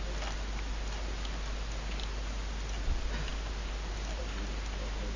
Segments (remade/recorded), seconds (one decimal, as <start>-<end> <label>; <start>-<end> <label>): 0.0-5.2 recorded